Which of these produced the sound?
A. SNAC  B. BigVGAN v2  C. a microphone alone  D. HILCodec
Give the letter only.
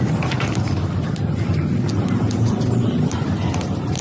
C